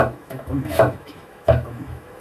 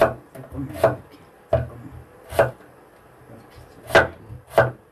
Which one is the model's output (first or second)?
first